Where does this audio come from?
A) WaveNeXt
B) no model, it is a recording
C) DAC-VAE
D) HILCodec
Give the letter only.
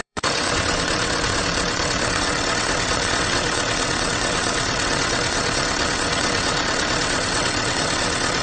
A